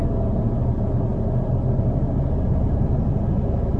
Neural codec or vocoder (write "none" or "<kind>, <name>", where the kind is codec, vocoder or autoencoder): none